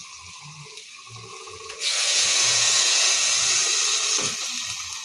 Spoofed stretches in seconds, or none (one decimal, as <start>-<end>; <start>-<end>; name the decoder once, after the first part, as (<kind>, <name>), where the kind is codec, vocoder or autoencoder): 1.3-3.5 (vocoder, Vocos)